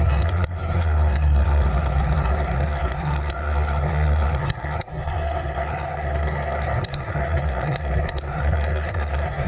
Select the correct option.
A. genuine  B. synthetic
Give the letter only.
B